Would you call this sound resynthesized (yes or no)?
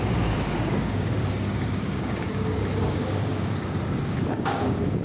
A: yes